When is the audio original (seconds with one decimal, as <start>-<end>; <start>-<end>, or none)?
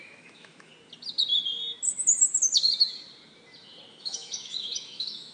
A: 0.7-3.9